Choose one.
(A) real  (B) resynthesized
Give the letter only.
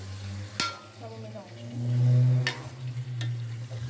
A